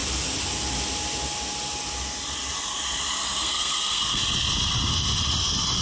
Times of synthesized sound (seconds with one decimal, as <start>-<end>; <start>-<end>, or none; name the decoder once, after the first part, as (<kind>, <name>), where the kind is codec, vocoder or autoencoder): 3.4-4.2 (codec, SNAC)